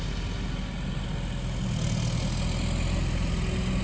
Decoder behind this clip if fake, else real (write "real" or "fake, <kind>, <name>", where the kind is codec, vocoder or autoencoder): real